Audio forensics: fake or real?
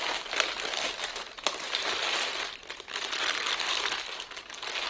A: real